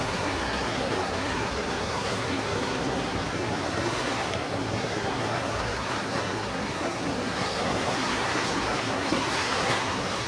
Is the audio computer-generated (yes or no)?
yes